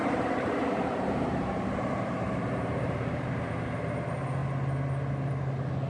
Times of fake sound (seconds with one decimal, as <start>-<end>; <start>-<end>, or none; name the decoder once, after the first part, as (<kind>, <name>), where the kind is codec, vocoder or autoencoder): 0.0-3.5 (vocoder, BigVGAN v2)

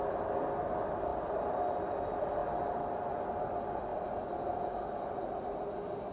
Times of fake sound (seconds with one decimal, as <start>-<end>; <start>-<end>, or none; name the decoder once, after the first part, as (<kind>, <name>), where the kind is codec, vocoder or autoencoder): none

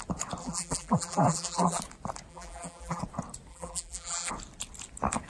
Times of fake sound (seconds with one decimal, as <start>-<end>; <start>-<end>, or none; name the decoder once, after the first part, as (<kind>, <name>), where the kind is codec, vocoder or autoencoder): 0.4-1.8 (vocoder, BigVGAN v2); 2.3-3.0; 3.5-4.3

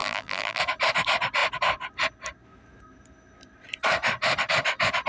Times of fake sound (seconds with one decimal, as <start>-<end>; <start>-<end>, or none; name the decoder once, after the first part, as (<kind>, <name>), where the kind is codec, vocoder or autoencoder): 0.0-0.6 (vocoder, BigVGAN v2)

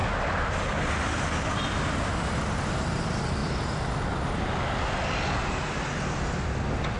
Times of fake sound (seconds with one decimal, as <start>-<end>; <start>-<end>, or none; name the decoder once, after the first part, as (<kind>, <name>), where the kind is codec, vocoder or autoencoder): 0.0-0.5 (vocoder, BigVGAN v2)